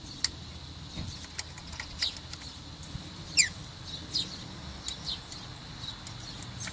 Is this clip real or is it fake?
real